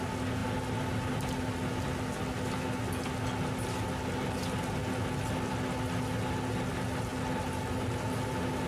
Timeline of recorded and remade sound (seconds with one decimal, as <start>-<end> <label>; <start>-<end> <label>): 0.0-8.7 recorded